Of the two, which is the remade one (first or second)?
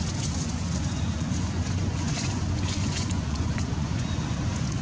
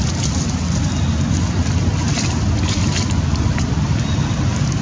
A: first